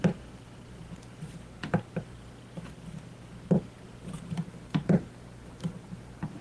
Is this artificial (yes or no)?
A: no